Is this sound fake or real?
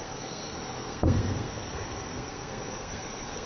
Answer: fake